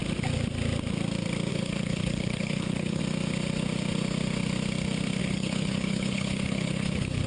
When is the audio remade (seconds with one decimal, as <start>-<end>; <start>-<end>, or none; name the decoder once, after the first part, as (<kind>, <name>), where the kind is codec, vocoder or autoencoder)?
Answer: 1.5-3.0 (codec, HILCodec); 5.2-7.3